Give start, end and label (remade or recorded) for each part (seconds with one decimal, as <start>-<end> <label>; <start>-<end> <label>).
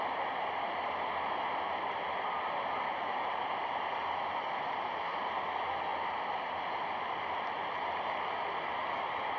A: 0.0-9.4 recorded